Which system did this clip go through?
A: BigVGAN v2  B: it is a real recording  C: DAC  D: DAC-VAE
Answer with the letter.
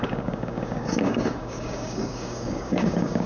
C